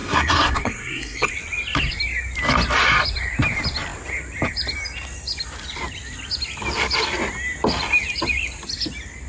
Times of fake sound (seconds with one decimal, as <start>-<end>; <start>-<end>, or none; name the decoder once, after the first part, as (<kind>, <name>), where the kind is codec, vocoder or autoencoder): 0.0-1.3 (codec, SNAC)